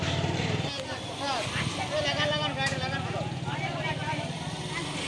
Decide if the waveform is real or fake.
real